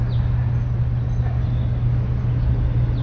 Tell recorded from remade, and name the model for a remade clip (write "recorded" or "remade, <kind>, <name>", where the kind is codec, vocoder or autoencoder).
recorded